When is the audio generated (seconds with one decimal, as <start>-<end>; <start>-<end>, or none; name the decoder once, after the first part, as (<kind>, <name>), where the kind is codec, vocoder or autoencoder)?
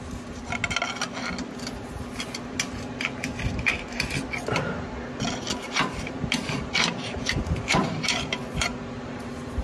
0.0-0.6 (vocoder, BigVGAN v2); 5.6-9.6